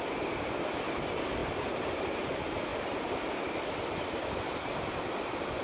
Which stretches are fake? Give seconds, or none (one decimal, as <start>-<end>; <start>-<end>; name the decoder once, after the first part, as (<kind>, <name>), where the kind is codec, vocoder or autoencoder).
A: 1.4-2.0 (vocoder, BigVGAN v2)